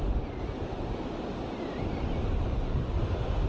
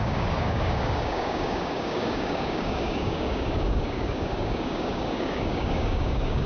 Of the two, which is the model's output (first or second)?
second